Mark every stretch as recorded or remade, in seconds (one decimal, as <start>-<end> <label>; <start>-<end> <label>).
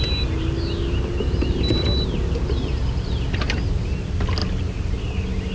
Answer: 0.0-5.5 recorded